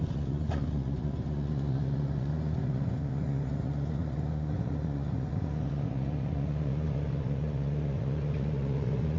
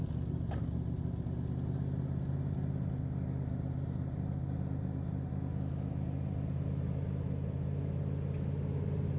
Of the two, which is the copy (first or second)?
first